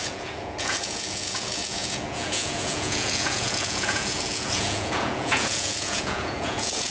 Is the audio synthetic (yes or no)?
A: yes